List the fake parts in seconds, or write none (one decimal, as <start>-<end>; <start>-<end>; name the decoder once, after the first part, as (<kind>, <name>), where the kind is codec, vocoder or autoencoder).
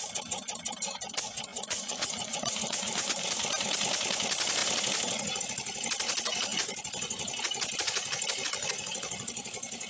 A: 1.5-3.3 (vocoder, Vocos)